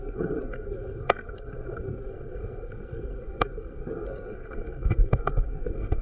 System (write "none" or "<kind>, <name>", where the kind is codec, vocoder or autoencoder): codec, SNAC